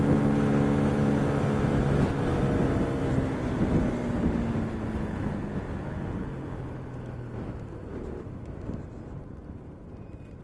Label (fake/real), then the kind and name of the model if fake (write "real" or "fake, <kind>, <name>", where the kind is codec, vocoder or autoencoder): real